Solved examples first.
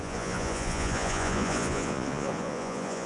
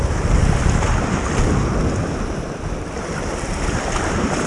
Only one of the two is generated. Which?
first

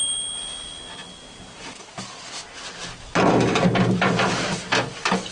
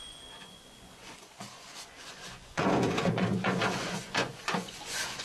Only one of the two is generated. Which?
second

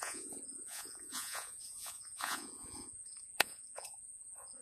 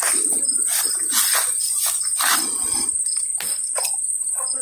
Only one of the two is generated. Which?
first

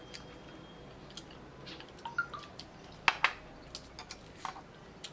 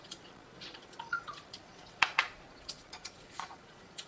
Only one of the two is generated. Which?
second